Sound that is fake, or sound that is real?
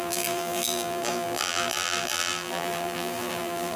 fake